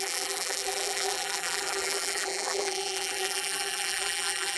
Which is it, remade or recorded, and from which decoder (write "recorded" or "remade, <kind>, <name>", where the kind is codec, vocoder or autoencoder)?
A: remade, vocoder, BigVGAN v2